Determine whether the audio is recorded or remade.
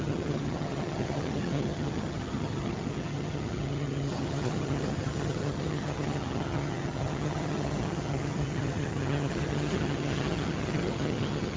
remade